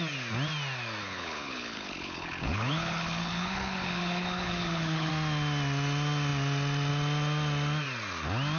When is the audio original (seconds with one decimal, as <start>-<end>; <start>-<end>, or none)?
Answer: 0.0-1.0; 5.1-8.6